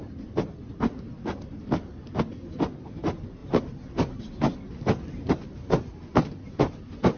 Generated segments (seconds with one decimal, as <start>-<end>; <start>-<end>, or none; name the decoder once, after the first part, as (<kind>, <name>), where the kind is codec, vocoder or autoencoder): 0.0-2.3 (vocoder, BigVGAN v2)